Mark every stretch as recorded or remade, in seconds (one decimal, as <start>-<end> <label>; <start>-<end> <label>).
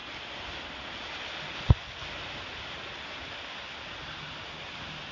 0.0-5.1 recorded